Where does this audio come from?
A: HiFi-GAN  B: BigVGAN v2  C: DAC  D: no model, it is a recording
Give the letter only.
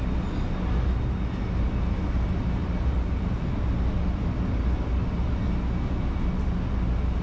D